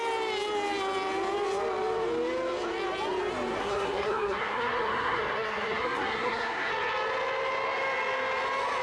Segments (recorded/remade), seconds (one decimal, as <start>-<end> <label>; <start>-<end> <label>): 0.0-3.6 recorded; 3.6-6.7 remade; 6.7-8.8 recorded